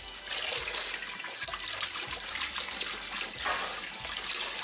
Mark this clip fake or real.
real